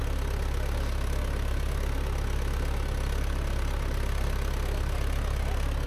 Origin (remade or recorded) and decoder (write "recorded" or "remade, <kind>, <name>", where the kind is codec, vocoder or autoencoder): recorded